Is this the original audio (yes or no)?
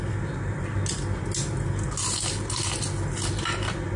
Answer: yes